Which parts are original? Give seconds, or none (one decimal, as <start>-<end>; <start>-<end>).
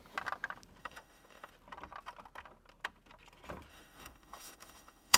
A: 0.0-0.8; 1.5-3.7